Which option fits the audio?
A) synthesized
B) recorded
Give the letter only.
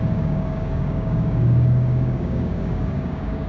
A